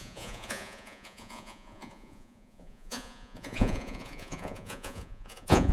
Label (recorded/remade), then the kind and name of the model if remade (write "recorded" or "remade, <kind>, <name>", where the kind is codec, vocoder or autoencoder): remade, vocoder, Vocos